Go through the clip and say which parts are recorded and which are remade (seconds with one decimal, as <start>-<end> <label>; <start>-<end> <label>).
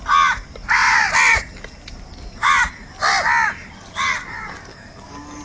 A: 0.0-4.7 recorded; 4.7-5.4 remade